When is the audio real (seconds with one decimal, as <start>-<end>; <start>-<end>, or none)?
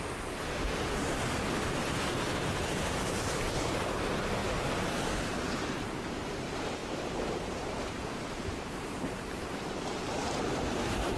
none